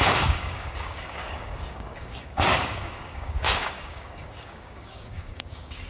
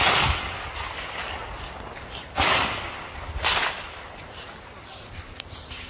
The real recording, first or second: second